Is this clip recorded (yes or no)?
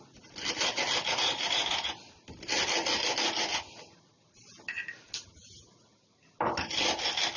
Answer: yes